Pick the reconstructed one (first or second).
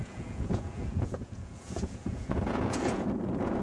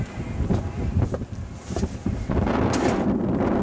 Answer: first